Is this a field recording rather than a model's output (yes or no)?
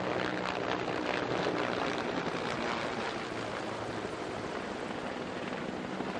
yes